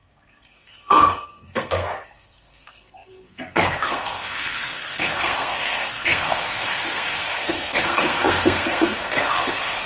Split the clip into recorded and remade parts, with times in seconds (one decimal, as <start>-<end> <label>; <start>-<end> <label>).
0.0-9.9 remade